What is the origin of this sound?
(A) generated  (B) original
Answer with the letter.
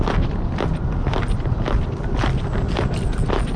B